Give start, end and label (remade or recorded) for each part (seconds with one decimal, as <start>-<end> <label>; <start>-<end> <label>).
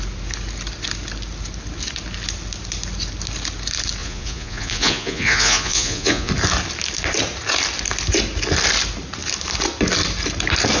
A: 0.0-4.0 recorded; 4.0-6.3 remade; 6.3-10.8 recorded